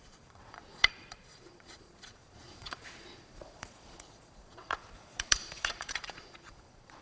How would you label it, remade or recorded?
remade